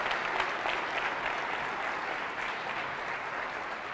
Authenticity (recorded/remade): recorded